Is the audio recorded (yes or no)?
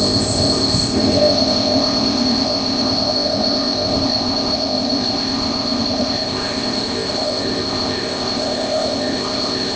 no